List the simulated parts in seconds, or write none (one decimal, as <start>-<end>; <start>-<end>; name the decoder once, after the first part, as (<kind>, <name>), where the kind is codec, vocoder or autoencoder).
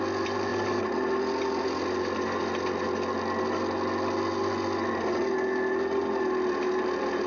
none